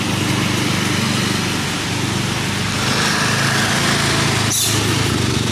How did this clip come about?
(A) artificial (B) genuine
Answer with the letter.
B